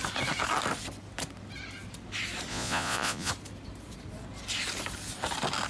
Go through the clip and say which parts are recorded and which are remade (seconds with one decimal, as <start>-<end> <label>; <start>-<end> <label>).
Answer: 0.0-2.5 recorded; 2.5-3.3 remade; 3.3-5.7 recorded